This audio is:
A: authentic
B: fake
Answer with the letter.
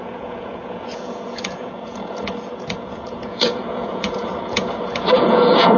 B